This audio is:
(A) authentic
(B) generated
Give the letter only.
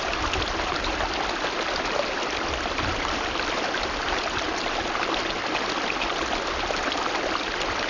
A